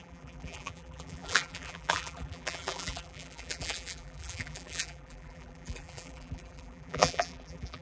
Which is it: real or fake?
fake